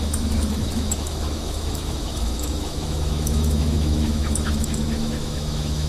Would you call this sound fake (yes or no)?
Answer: yes